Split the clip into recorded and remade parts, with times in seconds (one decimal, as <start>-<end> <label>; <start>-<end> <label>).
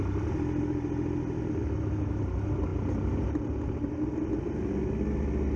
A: 0.0-1.6 recorded; 1.6-2.2 remade; 2.2-5.6 recorded